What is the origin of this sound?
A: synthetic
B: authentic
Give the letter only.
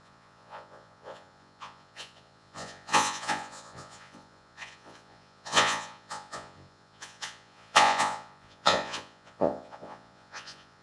A